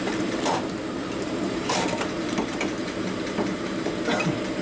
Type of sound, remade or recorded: remade